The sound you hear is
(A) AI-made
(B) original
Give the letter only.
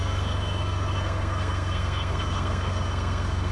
A